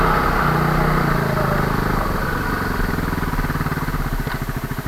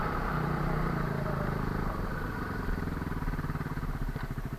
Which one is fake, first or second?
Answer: second